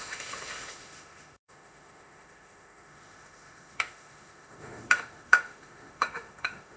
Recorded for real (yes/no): no